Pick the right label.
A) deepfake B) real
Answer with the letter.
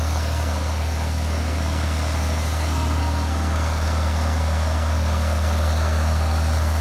A